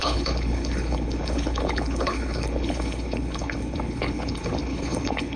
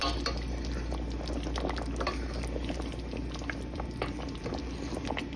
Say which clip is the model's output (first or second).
first